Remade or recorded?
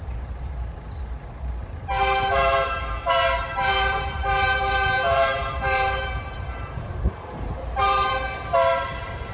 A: remade